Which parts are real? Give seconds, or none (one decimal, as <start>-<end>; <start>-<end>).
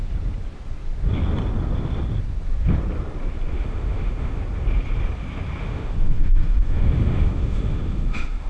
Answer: 0.0-3.5; 4.4-5.6